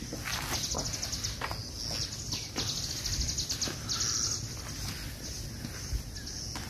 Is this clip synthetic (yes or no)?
no